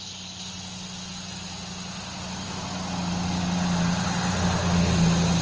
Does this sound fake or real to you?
real